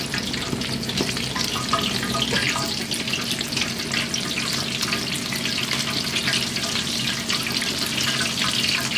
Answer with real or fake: real